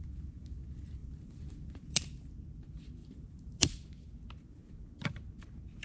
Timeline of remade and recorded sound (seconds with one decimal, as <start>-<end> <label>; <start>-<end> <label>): 0.0-1.0 recorded; 1.0-2.3 remade; 2.3-3.0 recorded; 3.0-4.1 remade; 4.1-5.8 recorded